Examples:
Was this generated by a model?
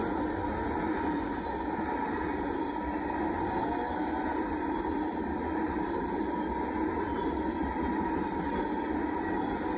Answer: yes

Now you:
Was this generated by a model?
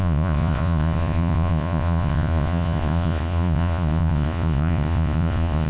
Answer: yes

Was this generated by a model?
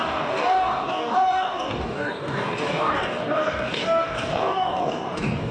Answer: yes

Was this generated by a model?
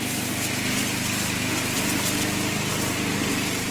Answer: no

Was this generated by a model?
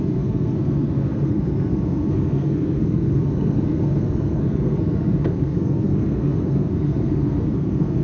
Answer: yes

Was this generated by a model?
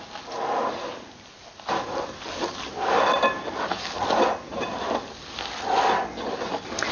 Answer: no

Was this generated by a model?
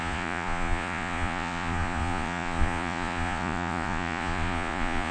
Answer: yes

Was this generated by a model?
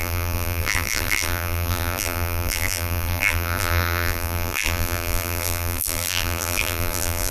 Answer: yes